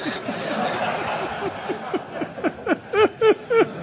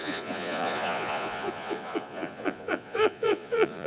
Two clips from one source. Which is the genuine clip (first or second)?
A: first